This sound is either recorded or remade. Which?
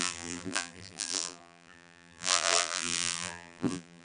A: remade